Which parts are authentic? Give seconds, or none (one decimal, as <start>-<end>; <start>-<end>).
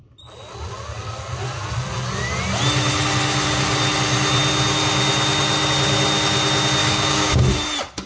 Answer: 0.0-6.8; 7.4-8.1